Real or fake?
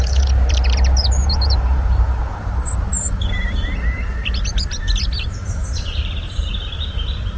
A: fake